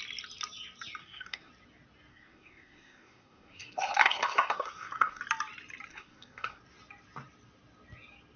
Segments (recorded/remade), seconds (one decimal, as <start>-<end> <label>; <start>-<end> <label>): 0.0-1.0 recorded; 1.0-1.5 remade; 1.5-2.1 recorded; 2.1-5.2 remade; 5.2-5.9 recorded; 5.9-6.6 remade; 6.6-8.4 recorded